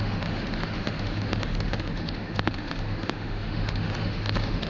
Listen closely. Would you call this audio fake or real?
fake